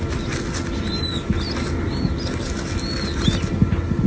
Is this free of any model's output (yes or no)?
yes